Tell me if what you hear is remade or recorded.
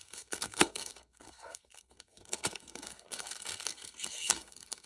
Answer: remade